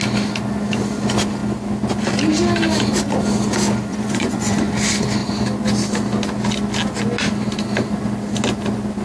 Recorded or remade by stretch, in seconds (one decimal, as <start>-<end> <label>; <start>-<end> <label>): 0.0-3.9 recorded; 3.9-4.7 remade; 4.7-9.0 recorded